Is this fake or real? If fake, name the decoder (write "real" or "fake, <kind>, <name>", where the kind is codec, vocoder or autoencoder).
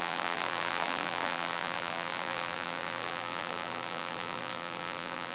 fake, vocoder, BigVGAN v2